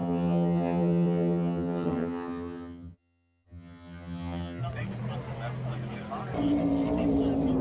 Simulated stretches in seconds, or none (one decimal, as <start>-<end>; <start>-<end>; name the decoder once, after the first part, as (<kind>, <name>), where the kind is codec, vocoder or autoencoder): 0.0-4.6 (vocoder, HiFi-GAN)